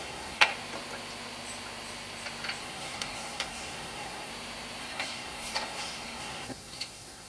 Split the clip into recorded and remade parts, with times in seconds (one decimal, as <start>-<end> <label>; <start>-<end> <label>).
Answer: 0.0-0.5 remade; 0.5-2.6 recorded; 2.6-4.3 remade; 4.3-4.8 recorded; 4.8-7.3 remade